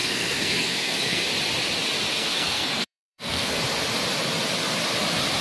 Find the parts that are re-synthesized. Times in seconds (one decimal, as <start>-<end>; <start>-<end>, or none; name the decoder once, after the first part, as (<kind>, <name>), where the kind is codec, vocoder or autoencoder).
0.0-1.3 (codec, SNAC); 2.1-3.6